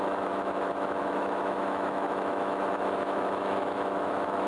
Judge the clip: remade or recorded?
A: remade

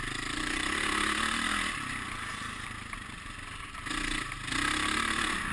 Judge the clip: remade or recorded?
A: recorded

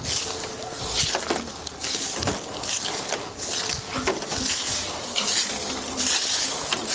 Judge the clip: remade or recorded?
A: recorded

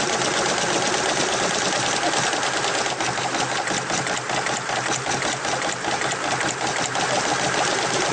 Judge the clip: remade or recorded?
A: recorded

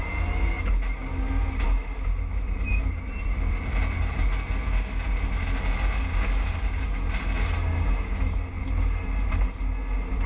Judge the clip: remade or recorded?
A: recorded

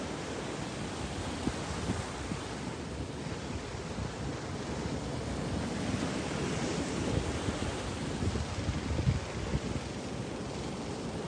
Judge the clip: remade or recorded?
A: recorded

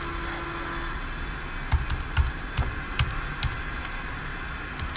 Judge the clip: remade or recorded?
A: recorded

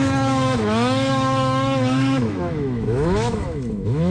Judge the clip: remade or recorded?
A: remade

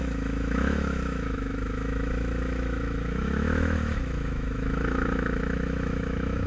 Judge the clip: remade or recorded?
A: remade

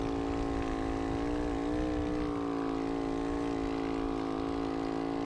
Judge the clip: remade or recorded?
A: recorded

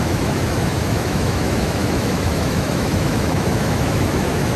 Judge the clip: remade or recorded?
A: remade